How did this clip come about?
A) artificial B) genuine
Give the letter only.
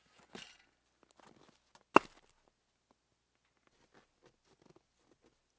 B